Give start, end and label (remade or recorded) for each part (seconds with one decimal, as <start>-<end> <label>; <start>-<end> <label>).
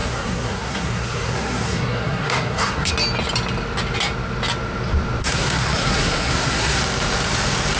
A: 0.0-2.9 remade; 2.9-5.2 recorded; 5.2-6.8 remade; 6.8-7.8 recorded